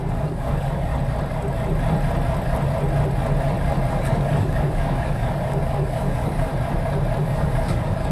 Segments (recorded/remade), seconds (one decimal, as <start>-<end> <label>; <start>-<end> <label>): 0.0-0.9 remade; 0.9-3.9 recorded; 3.9-6.5 remade; 6.5-7.2 recorded; 7.2-8.1 remade